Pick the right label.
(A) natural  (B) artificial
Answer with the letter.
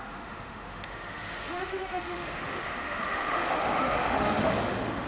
B